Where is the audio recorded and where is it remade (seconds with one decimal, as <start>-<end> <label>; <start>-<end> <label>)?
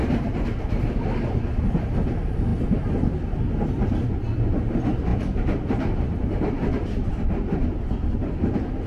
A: 0.0-2.5 recorded; 2.5-3.2 remade; 3.2-5.1 recorded; 5.1-7.1 remade; 7.1-8.9 recorded